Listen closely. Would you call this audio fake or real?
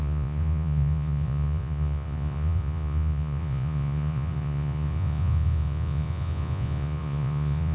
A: fake